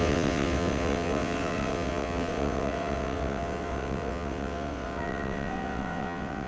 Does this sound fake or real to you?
fake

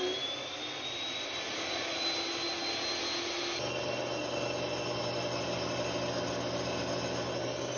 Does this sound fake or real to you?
real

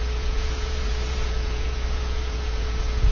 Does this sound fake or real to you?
fake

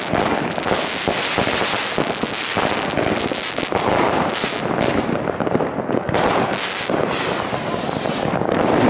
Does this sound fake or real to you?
real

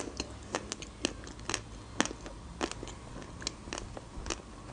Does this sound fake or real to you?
real